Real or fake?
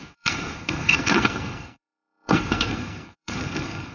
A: fake